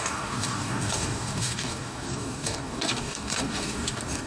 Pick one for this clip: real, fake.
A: fake